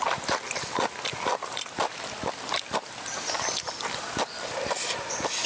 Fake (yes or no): yes